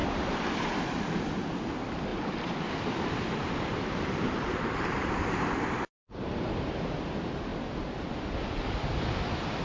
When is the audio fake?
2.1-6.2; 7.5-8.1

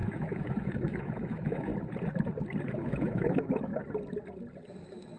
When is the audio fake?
0.0-1.7; 2.6-3.7

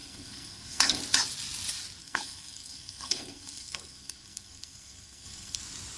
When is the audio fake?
0.0-1.0; 2.0-5.6

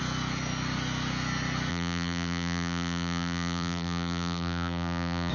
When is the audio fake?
1.7-5.3